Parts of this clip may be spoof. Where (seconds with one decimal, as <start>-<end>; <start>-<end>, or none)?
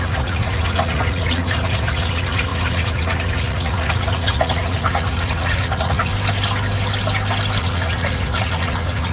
0.0-6.1; 7.6-9.1